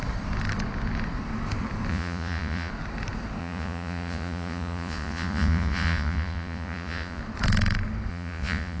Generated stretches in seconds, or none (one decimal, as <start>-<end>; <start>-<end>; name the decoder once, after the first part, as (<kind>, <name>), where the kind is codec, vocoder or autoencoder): 1.9-2.7 (vocoder, Vocos); 3.4-7.2; 8.1-8.8